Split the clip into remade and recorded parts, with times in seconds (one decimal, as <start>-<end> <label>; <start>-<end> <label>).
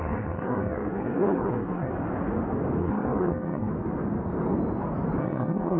0.0-1.9 remade; 1.9-2.8 recorded; 2.8-3.7 remade; 3.7-5.2 recorded; 5.2-5.8 remade